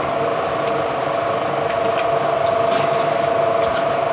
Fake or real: real